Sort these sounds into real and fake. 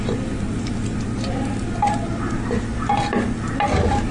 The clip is real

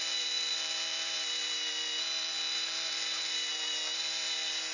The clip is fake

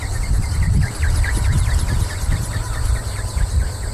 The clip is fake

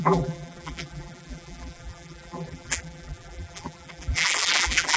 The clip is fake